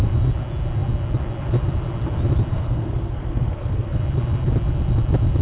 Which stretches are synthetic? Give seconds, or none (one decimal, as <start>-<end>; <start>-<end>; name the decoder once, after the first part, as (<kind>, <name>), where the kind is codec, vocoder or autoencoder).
2.5-4.0 (codec, SNAC)